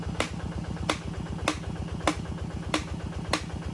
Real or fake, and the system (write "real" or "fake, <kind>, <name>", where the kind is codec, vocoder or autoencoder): real